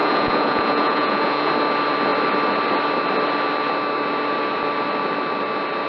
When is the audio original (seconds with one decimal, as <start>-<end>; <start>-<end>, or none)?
1.5-5.9